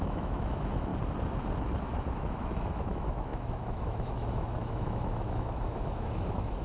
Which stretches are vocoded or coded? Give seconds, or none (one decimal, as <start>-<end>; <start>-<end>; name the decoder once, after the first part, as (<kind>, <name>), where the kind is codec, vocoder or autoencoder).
0.0-0.9 (autoencoder, DAC-VAE); 1.8-6.6